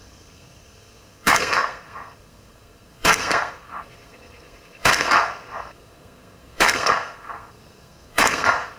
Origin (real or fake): fake